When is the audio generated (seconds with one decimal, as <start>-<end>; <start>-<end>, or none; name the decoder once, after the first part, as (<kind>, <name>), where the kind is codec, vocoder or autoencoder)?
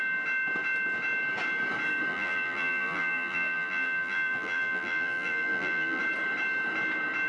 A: 2.1-6.0 (vocoder, BigVGAN v2)